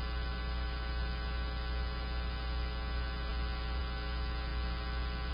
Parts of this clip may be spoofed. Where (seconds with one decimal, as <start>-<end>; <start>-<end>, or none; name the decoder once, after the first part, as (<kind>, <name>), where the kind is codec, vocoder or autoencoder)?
none